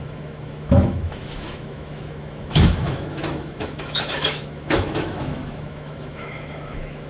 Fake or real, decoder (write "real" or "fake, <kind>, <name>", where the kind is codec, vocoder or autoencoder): fake, autoencoder, DAC-VAE